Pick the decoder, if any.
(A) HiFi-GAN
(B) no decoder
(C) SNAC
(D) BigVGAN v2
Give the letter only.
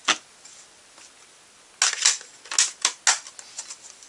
B